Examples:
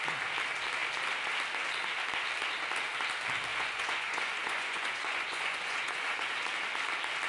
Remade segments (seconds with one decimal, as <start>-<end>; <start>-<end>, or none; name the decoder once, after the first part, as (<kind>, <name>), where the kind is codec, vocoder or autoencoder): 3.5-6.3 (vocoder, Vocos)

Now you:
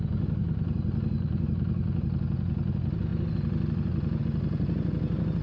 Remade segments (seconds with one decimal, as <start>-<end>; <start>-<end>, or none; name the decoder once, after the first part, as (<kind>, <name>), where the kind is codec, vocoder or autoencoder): none

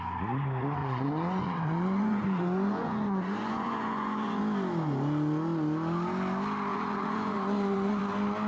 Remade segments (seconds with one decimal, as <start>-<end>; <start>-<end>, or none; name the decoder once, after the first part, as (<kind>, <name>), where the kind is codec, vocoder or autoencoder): 0.8-4.4 (vocoder, Vocos); 6.7-8.0